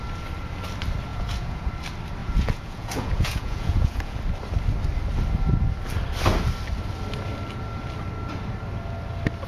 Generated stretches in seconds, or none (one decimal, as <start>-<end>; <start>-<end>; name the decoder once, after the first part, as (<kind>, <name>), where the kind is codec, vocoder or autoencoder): 1.1-1.7 (vocoder, Vocos); 2.2-4.2